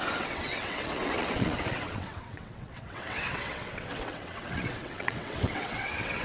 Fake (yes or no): yes